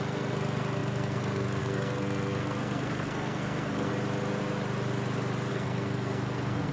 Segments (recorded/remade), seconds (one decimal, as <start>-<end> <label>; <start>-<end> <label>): 0.0-3.9 remade; 3.9-5.5 recorded; 5.5-6.7 remade